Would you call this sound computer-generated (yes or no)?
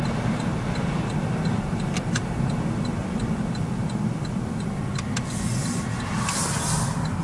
no